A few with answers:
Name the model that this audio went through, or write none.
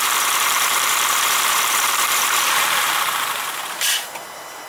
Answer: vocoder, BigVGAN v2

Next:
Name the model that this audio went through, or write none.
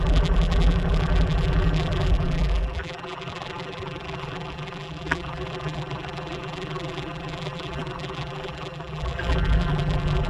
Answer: vocoder, BigVGAN v2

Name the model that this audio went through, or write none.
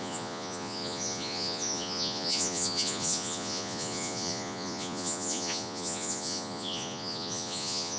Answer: vocoder, Vocos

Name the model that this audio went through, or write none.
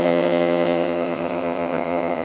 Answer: vocoder, HiFi-GAN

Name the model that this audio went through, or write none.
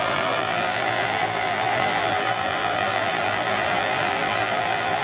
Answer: vocoder, BigVGAN v2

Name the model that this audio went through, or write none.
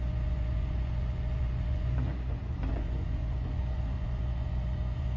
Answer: vocoder, Vocos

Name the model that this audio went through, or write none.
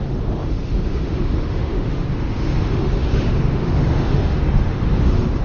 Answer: autoencoder, DAC-VAE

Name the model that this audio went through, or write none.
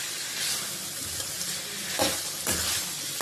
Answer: none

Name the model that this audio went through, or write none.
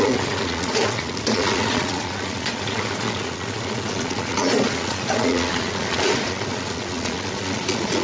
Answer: vocoder, Vocos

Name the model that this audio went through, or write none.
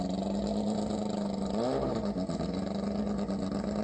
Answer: none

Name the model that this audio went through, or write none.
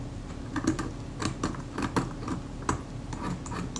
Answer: none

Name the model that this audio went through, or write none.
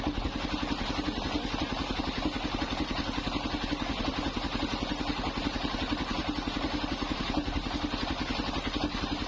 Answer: none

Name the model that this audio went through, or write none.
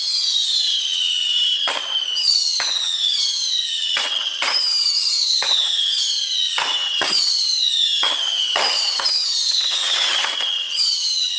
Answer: vocoder, HiFi-GAN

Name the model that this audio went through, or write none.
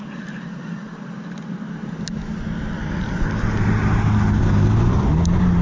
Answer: none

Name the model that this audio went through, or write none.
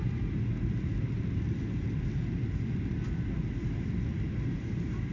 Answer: none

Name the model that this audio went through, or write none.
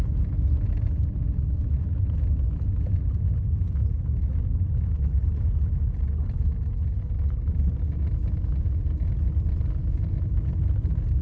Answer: none